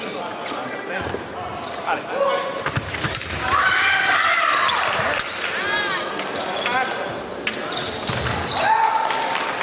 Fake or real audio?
real